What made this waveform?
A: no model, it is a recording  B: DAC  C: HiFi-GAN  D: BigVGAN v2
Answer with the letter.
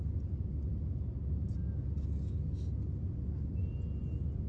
A